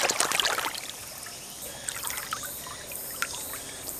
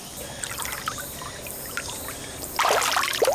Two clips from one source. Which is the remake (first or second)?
second